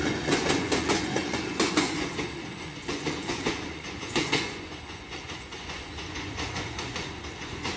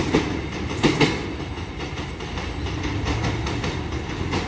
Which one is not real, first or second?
first